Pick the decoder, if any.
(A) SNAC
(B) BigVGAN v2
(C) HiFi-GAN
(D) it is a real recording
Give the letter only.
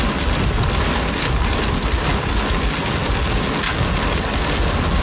D